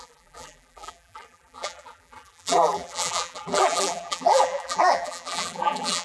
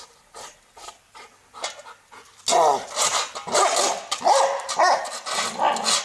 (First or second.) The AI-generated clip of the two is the first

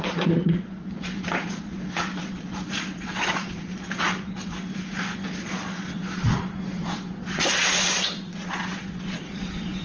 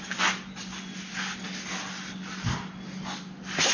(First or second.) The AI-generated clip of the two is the first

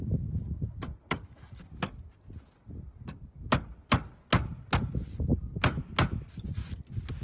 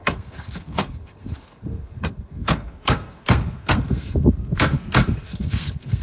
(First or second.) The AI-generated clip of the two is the second